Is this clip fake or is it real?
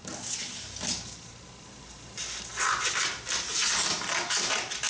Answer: real